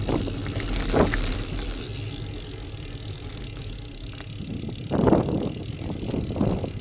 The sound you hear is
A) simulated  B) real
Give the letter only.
B